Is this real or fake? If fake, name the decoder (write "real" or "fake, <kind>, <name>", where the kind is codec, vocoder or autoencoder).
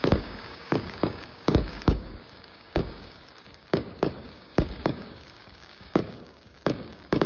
fake, codec, DAC